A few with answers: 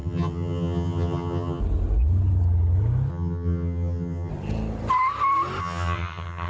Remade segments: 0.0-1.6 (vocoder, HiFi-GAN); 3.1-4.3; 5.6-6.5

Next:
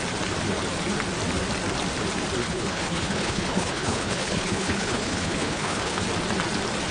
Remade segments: 2.4-6.0 (codec, HILCodec)

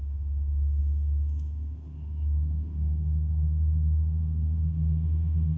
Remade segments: 0.0-5.6 (autoencoder, DAC-VAE)

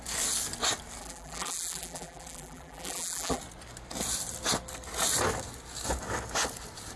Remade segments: 1.0-3.4 (vocoder, BigVGAN v2)

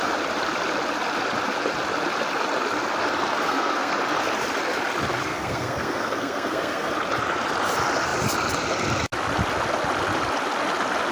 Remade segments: 3.3-3.9 (codec, SNAC); 5.3-6.9

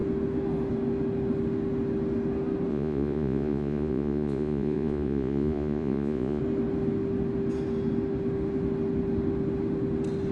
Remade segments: 2.7-6.4 (vocoder, Vocos)

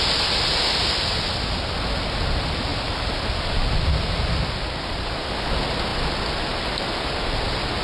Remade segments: none